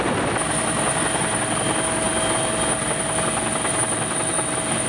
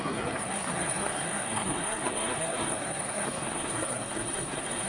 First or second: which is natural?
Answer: first